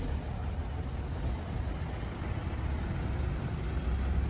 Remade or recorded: recorded